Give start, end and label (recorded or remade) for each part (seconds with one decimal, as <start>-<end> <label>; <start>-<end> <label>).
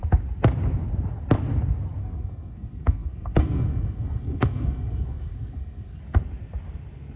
0.0-2.0 recorded; 2.0-6.0 remade; 6.0-7.2 recorded